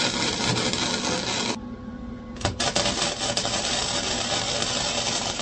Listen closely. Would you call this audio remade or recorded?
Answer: recorded